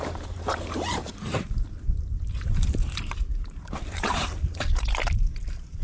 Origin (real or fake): fake